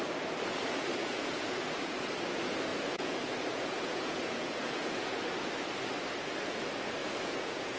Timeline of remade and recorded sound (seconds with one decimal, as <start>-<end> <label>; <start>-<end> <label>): 0.0-1.0 recorded; 1.0-2.1 remade; 2.1-2.7 recorded; 2.7-5.2 remade; 5.2-7.0 recorded; 7.0-7.8 remade